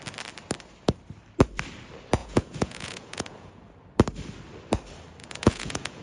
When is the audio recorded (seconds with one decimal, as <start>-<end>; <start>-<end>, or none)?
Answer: 0.0-2.2; 3.5-5.2